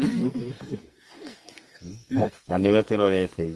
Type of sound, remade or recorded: remade